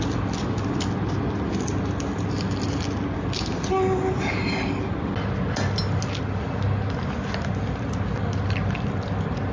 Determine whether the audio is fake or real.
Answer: real